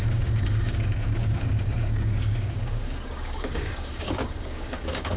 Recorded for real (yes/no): no